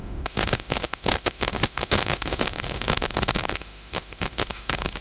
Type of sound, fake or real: fake